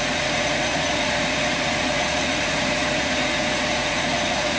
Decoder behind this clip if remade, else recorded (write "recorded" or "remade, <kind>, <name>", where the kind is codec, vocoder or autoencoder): remade, vocoder, Vocos